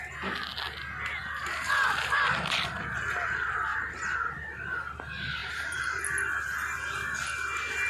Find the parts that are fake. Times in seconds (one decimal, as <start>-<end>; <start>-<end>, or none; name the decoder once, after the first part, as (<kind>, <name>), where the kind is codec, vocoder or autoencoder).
3.7-4.3 (vocoder, BigVGAN v2); 5.4-6.0

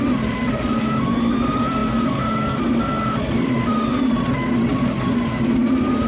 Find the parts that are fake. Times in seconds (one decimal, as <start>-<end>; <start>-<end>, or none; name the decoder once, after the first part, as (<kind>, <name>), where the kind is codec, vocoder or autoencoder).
none

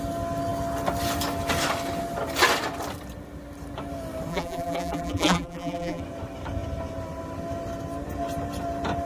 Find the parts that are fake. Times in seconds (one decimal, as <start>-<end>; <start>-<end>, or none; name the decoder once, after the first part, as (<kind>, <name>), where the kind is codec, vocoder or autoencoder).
4.3-6.0 (vocoder, BigVGAN v2)